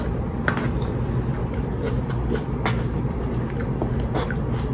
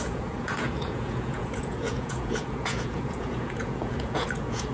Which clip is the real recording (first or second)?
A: first